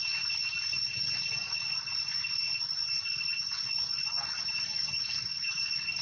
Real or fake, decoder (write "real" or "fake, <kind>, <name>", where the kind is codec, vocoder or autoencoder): real